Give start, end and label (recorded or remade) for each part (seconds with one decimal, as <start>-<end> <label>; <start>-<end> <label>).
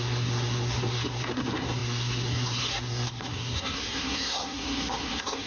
0.0-5.5 remade